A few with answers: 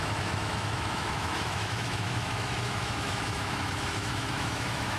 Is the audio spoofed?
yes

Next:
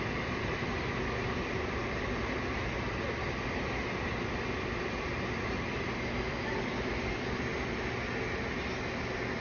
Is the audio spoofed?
no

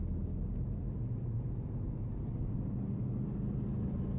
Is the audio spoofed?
no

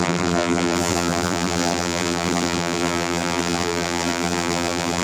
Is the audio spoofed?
yes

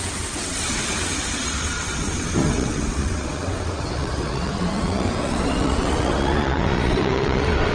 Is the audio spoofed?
yes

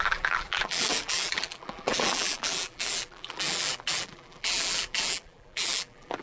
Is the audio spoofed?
yes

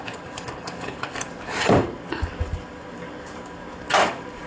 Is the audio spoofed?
yes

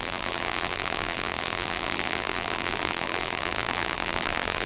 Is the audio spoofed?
yes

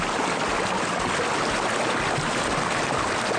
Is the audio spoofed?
no